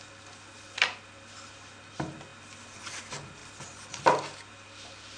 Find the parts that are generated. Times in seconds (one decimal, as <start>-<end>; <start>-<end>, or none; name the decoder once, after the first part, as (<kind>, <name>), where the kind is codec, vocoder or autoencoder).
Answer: none